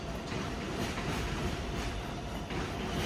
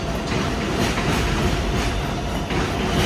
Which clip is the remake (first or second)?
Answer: first